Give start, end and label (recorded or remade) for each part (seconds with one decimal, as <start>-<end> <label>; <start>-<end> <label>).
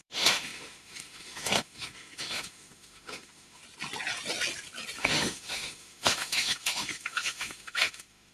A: 0.0-3.6 remade; 3.6-5.0 recorded; 5.0-8.3 remade